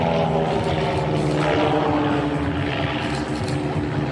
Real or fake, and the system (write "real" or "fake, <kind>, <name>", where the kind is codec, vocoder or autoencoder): real